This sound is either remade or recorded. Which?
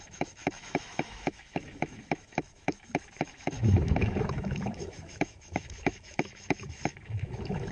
remade